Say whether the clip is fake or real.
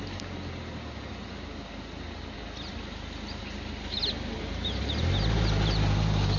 real